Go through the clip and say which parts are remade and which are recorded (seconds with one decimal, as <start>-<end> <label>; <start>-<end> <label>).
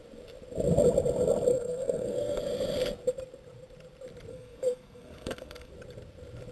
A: 0.0-1.5 recorded; 1.5-2.4 remade; 2.4-4.3 recorded; 4.3-5.7 remade; 5.7-6.5 recorded